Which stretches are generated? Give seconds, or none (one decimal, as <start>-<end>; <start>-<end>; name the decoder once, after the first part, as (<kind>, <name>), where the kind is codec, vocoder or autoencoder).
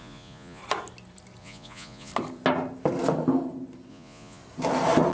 0.0-0.6 (vocoder, Vocos); 1.4-2.1; 3.9-4.4